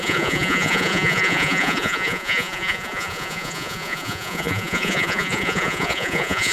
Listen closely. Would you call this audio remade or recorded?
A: remade